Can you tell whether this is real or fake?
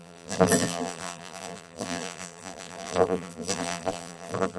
fake